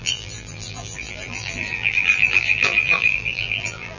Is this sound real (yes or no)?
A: no